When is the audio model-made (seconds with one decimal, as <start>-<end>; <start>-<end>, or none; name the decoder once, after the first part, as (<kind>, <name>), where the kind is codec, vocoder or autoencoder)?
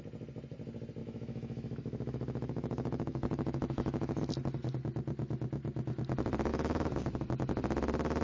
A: 1.0-4.2 (autoencoder, DAC-VAE); 6.5-7.0